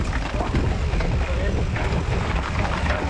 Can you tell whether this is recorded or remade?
recorded